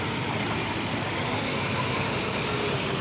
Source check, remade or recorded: recorded